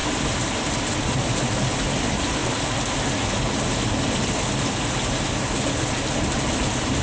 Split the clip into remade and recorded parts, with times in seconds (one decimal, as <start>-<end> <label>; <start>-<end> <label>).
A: 0.0-7.0 recorded